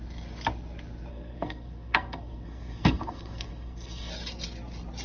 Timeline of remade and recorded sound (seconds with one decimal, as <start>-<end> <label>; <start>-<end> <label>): 0.0-1.1 recorded; 1.1-4.1 remade; 4.1-5.0 recorded